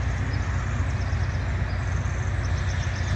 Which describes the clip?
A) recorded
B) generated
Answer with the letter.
A